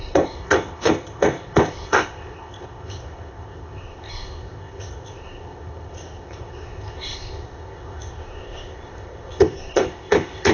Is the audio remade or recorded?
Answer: remade